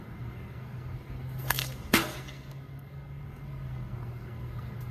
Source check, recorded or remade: remade